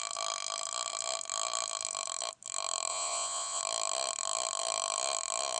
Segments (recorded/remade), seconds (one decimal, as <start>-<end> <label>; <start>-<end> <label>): 0.0-2.9 recorded; 2.9-3.6 remade; 3.6-5.6 recorded